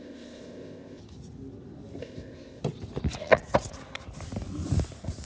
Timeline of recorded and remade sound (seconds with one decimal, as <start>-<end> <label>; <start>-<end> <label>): 0.0-1.0 remade; 1.0-2.0 recorded; 2.0-2.6 remade; 2.6-5.3 recorded